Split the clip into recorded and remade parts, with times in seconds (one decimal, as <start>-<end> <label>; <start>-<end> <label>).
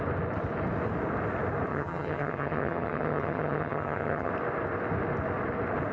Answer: 0.0-1.7 recorded; 1.7-4.3 remade; 4.3-5.9 recorded